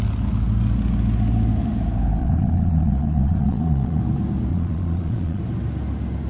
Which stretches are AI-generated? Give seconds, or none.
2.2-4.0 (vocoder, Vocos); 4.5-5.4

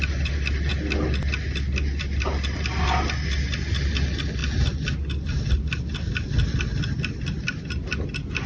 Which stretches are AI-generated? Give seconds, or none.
none